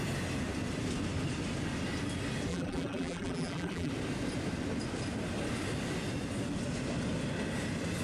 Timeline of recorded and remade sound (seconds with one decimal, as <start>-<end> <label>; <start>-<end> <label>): 0.0-2.5 recorded; 2.5-3.9 remade; 3.9-8.0 recorded